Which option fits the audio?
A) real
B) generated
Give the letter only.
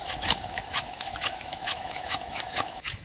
B